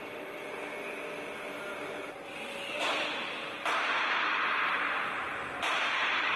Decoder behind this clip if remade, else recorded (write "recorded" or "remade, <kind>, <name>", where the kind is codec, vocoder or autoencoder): recorded